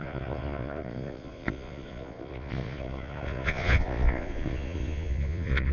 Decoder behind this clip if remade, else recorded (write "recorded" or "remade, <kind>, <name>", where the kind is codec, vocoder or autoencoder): remade, vocoder, Vocos